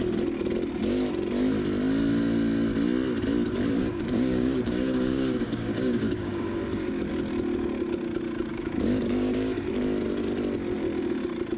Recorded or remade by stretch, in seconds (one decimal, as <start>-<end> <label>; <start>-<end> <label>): 0.0-3.8 recorded; 3.8-7.1 remade; 7.1-8.5 recorded; 8.5-9.7 remade; 9.7-11.6 recorded